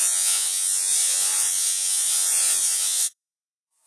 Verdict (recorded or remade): remade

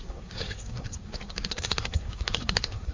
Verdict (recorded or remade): remade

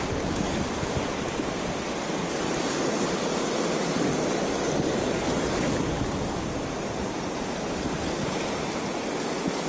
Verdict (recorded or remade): recorded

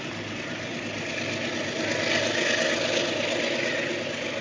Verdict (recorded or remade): recorded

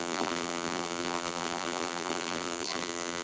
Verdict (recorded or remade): remade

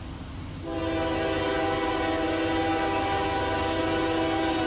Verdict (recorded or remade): recorded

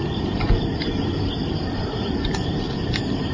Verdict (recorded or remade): recorded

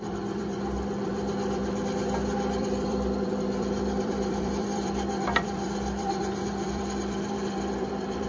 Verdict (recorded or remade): remade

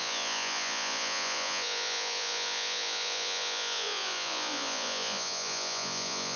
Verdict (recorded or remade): remade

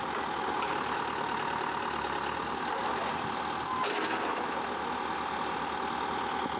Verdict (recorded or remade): recorded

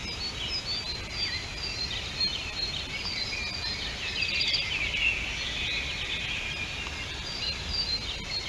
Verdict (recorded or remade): recorded